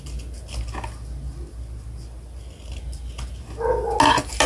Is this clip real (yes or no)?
yes